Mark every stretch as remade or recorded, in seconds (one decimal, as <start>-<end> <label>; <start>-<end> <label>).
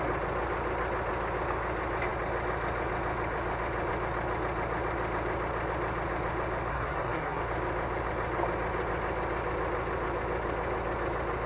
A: 0.0-6.7 recorded; 6.7-7.4 remade; 7.4-11.5 recorded